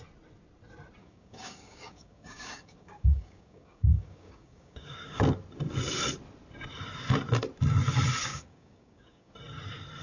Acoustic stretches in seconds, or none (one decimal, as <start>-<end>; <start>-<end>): 0.0-1.0; 5.2-8.3; 9.3-10.0